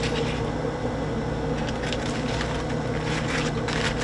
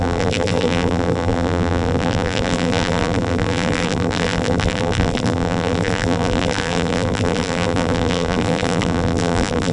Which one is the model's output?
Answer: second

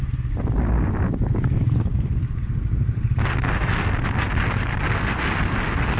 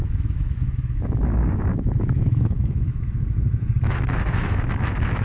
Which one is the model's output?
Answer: second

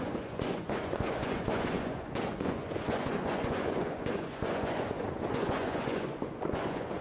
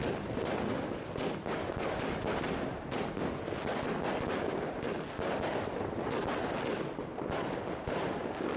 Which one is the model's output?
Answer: first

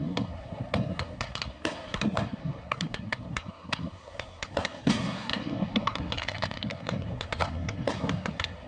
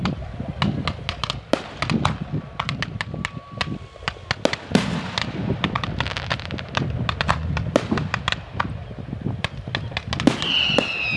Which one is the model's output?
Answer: first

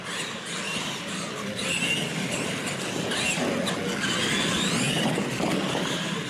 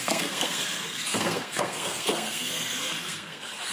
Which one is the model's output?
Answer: second